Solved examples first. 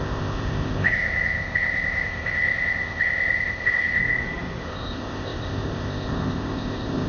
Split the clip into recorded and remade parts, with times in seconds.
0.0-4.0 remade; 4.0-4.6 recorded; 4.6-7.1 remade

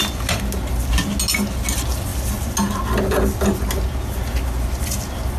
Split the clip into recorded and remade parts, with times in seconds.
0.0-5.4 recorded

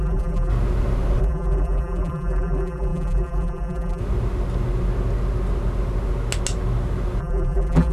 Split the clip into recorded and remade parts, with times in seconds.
0.0-0.5 remade; 0.5-1.2 recorded; 1.2-4.0 remade; 4.0-7.2 recorded; 7.2-7.9 remade